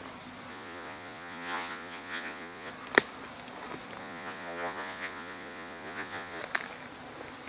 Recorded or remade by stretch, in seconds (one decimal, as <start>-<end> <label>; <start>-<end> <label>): 0.0-0.5 recorded; 0.5-2.7 remade; 2.7-4.0 recorded; 4.0-6.4 remade; 6.4-7.5 recorded

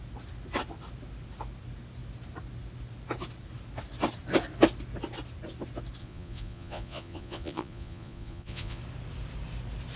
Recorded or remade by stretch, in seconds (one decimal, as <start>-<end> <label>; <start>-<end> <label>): 0.0-6.0 recorded; 6.0-8.8 remade; 8.8-10.0 recorded

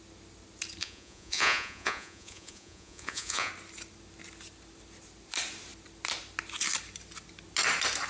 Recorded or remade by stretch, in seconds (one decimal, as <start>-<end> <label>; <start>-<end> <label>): 0.0-0.8 recorded; 0.8-3.5 remade; 3.5-8.1 recorded

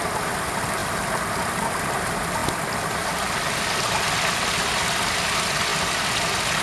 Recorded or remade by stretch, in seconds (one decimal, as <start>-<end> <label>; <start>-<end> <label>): 0.0-6.6 recorded

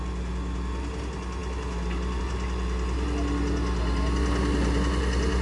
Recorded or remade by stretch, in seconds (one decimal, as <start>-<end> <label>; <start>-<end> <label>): 0.0-5.4 recorded

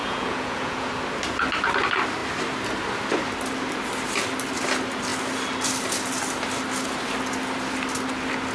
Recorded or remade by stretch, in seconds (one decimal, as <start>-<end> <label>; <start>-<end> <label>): 0.0-0.9 remade; 0.9-8.5 recorded

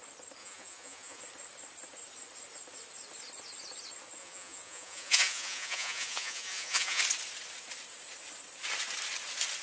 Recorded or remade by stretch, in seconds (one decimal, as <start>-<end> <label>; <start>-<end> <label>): 0.0-0.4 recorded; 0.4-1.2 remade; 1.2-4.2 recorded; 4.2-7.0 remade; 7.0-9.6 recorded

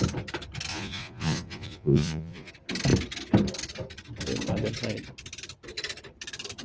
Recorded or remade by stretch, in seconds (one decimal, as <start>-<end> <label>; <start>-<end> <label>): 0.0-0.7 recorded; 0.7-2.5 remade; 2.5-6.6 recorded